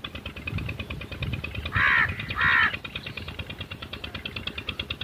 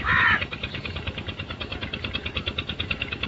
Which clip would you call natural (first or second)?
first